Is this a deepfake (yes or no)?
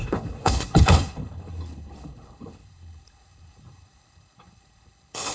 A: yes